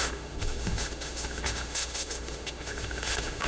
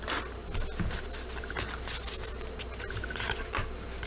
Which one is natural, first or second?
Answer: second